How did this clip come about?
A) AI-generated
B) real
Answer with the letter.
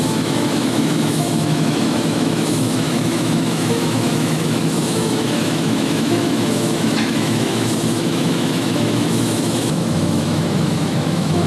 A